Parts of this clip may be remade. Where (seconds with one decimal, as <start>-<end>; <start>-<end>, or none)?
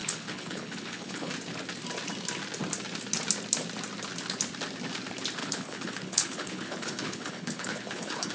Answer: 0.0-1.3; 5.4-8.3